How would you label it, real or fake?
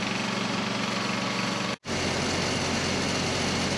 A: real